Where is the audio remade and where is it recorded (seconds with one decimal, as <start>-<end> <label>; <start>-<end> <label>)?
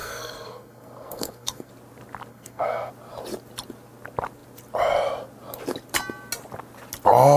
0.0-1.7 remade; 1.7-2.3 recorded; 2.3-2.9 remade; 2.9-7.4 recorded